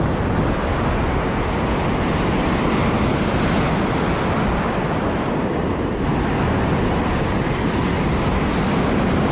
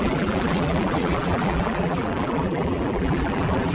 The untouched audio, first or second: first